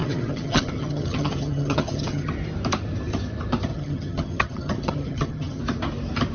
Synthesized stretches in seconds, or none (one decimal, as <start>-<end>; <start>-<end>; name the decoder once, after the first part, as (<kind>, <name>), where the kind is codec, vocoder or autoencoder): 0.0-2.3 (vocoder, HiFi-GAN); 3.7-5.6